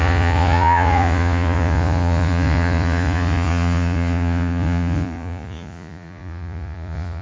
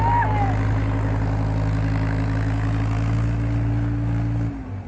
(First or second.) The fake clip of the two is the first